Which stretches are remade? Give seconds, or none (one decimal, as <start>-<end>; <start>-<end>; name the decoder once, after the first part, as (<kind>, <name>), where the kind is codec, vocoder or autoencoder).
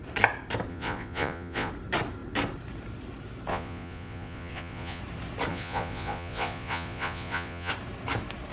0.7-1.7 (vocoder, Vocos); 3.5-5.0; 5.5-7.7